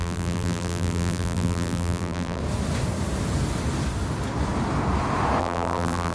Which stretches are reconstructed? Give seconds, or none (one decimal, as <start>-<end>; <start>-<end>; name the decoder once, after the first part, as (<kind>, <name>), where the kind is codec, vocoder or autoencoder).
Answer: 0.0-2.4 (vocoder, BigVGAN v2); 5.4-6.1